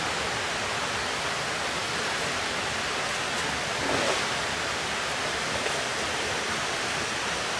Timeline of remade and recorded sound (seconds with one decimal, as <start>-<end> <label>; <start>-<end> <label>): 0.0-7.6 recorded